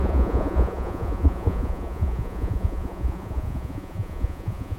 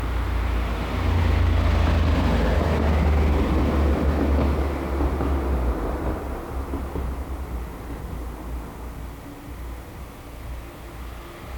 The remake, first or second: first